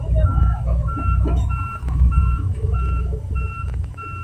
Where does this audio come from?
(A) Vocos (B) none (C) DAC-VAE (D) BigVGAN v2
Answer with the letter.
C